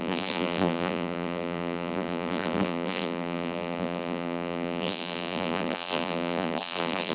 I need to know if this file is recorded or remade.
remade